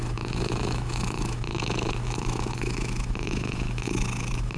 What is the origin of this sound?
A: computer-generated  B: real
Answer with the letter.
A